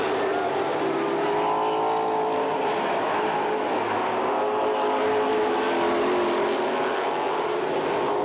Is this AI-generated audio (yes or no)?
no